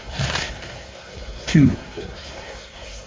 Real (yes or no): no